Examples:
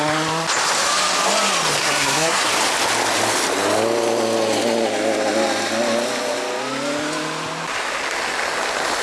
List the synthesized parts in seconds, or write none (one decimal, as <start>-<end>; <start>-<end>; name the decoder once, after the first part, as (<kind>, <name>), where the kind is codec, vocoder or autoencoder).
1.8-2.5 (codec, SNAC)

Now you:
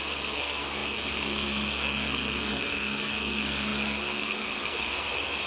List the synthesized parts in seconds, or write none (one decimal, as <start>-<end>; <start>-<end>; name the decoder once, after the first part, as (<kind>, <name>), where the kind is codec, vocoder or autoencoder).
0.0-5.5 (codec, SNAC)

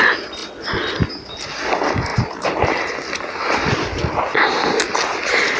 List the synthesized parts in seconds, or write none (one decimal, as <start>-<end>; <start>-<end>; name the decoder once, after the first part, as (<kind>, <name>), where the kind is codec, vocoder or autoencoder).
none

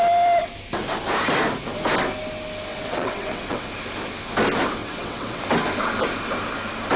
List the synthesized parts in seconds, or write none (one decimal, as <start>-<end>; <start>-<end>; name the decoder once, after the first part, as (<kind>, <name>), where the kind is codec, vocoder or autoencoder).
2.7-3.7 (vocoder, WaveNeXt); 4.8-5.4

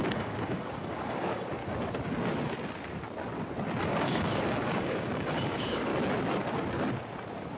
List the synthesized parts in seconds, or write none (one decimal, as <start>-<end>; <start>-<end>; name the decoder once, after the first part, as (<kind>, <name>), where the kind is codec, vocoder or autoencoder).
0.0-1.6 (codec, DAC); 3.9-5.9

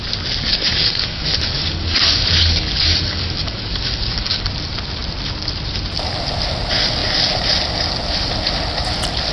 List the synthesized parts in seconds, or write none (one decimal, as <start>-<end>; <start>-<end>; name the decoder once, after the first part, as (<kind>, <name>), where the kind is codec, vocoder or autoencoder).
0.5-4.5 (codec, DAC)

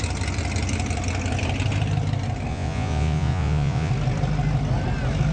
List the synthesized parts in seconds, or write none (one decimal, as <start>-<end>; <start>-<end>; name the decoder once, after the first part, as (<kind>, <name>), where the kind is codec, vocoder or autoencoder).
2.5-3.9 (vocoder, Vocos)